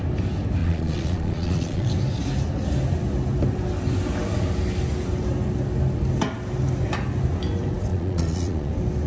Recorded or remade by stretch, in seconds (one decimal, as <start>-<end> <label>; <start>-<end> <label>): 0.0-0.6 recorded; 0.6-1.9 remade; 1.9-7.9 recorded; 7.9-8.7 remade; 8.7-9.1 recorded